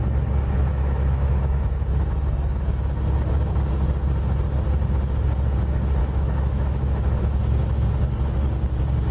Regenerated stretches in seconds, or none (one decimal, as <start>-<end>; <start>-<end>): 0.7-1.9; 6.0-7.4